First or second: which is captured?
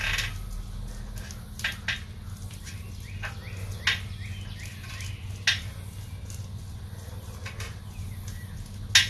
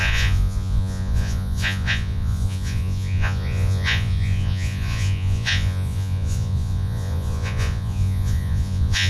first